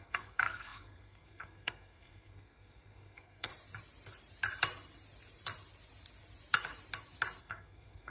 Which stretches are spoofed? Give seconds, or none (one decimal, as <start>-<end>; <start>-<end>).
0.0-3.5; 7.4-8.1